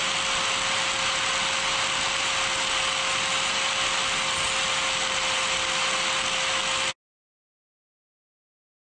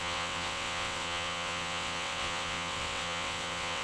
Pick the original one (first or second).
first